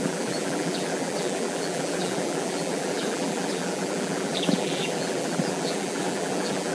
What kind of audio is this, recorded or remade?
remade